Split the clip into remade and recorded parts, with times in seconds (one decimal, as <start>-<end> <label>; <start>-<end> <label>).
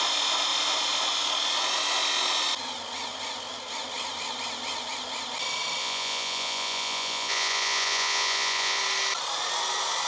0.0-5.8 recorded; 5.8-8.8 remade; 8.8-10.1 recorded